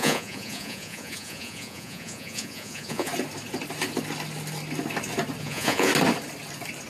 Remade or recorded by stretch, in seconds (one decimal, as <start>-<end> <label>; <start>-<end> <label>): 0.0-3.1 remade; 3.1-5.4 recorded; 5.4-5.9 remade; 5.9-6.9 recorded